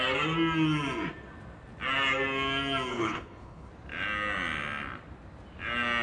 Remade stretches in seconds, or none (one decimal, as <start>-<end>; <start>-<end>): 2.9-3.7